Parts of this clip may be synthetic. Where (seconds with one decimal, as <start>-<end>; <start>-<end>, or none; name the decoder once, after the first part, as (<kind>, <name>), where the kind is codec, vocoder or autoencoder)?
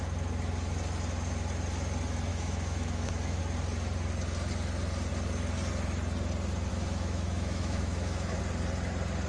2.3-3.4 (autoencoder, DAC-VAE); 6.7-8.4